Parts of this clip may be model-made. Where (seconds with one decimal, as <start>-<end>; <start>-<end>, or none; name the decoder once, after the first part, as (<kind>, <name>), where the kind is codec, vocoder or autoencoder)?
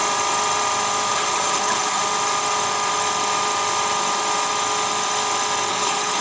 1.1-2.0 (codec, HILCodec); 5.7-6.2